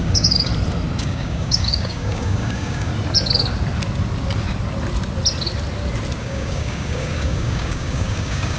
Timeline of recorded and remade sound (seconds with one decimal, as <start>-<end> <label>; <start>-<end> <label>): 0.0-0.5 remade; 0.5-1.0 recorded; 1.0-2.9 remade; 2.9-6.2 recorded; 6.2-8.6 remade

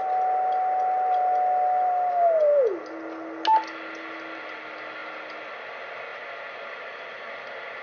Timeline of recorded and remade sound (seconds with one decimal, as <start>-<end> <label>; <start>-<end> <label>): 0.0-7.8 recorded

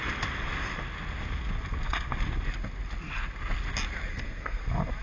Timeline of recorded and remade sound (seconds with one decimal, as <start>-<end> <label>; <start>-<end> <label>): 0.0-4.1 recorded; 4.1-4.6 remade; 4.6-5.0 recorded

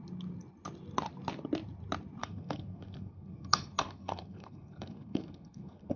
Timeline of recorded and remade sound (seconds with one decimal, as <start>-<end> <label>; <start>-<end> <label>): 0.0-2.2 recorded; 2.2-6.0 remade

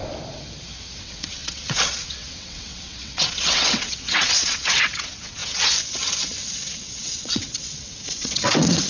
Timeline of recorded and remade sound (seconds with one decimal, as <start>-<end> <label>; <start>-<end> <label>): 0.0-1.0 recorded; 1.0-8.9 remade